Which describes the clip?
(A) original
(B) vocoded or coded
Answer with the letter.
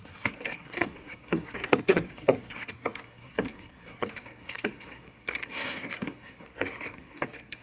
B